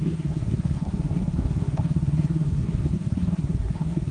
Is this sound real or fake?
fake